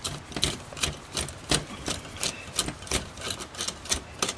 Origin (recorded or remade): recorded